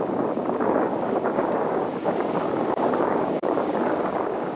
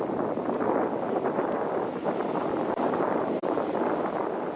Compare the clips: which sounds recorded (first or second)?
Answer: second